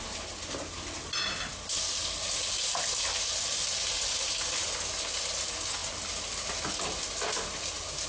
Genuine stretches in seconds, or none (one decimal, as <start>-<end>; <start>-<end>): 0.0-8.1

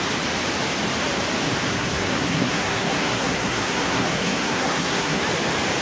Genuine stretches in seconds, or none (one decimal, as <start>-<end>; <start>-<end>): 0.0-1.7; 5.2-5.8